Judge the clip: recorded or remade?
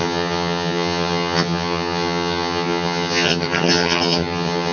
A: remade